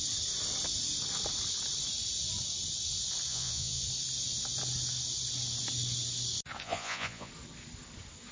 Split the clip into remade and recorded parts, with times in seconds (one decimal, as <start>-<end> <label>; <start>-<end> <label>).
0.0-3.3 recorded; 3.3-3.8 remade; 3.8-6.6 recorded; 6.6-7.3 remade; 7.3-8.3 recorded